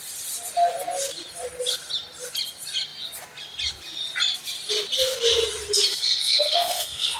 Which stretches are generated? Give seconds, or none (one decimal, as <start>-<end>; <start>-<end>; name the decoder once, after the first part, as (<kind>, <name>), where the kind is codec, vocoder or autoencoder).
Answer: 5.9-7.2 (codec, SNAC)